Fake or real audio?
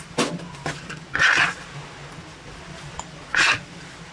real